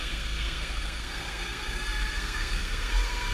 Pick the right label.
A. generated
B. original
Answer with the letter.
A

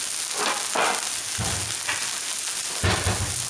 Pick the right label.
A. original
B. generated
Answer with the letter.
A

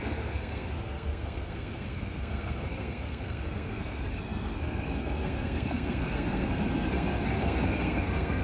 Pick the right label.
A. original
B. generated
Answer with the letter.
B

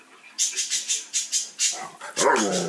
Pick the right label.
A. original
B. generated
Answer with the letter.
A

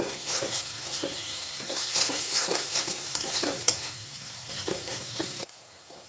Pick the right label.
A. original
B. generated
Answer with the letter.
B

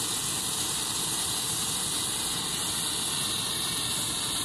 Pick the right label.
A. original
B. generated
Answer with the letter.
A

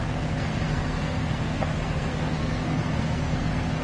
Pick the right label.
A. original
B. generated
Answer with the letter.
B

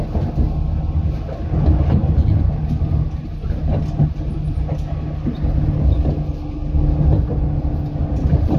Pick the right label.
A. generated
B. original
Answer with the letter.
B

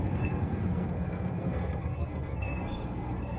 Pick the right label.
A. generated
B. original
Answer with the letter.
A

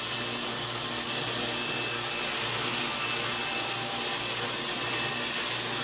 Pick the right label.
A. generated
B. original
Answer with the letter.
B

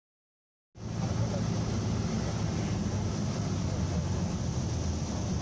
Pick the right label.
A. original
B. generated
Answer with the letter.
A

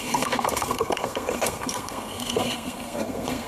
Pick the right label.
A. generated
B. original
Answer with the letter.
A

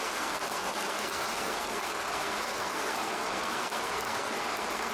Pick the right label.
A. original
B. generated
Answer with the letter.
B